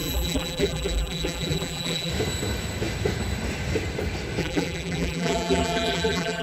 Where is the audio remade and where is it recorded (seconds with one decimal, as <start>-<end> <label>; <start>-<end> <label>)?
0.0-2.1 remade; 2.1-4.4 recorded; 4.4-6.4 remade